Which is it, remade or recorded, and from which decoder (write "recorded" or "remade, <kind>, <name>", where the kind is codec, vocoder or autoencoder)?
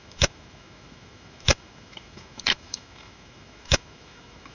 remade, autoencoder, DAC-VAE